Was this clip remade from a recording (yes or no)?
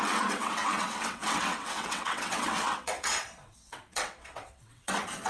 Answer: yes